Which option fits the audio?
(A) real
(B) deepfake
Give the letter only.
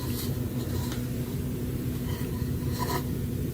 B